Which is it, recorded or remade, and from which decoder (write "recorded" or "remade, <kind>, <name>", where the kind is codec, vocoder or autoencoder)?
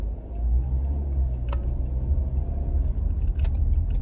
recorded